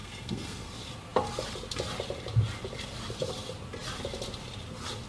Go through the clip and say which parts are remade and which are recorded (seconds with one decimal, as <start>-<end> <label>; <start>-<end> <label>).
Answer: 0.0-0.7 remade; 0.7-5.1 recorded